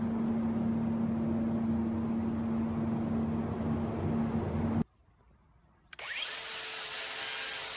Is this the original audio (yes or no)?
yes